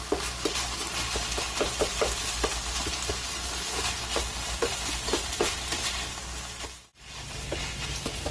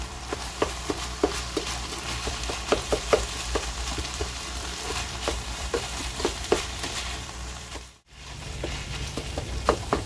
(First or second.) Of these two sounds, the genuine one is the first